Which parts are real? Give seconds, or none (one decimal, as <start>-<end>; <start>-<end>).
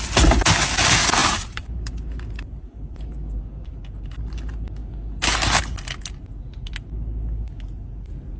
0.0-1.2; 3.0-8.4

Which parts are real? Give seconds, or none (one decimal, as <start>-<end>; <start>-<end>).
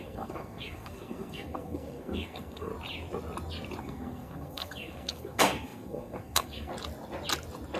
2.7-3.8; 6.7-7.8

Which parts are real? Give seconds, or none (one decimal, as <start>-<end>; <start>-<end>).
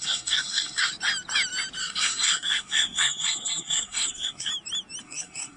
0.9-1.8; 4.5-5.0